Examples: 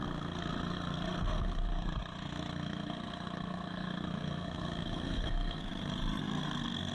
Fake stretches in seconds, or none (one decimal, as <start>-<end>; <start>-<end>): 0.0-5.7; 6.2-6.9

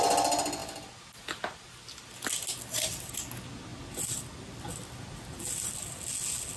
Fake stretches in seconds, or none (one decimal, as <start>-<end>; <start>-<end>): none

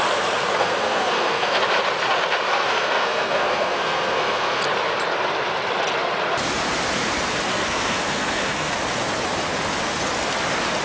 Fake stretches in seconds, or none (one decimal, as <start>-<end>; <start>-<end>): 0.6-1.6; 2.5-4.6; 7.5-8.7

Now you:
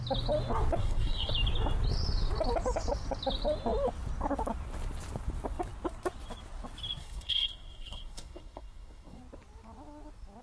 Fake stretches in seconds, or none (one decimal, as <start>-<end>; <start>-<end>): 0.8-1.3; 7.0-9.2

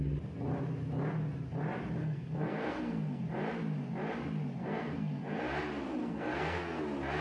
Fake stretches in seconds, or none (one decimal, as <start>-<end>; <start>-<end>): 2.0-3.2; 4.6-5.4; 6.0-6.8